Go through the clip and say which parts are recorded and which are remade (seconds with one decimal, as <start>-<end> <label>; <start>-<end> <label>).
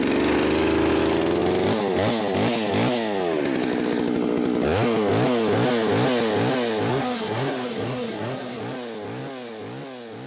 0.0-6.9 recorded; 6.9-8.6 remade; 8.6-10.3 recorded